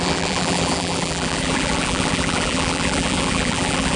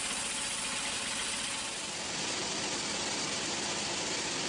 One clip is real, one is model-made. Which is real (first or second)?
second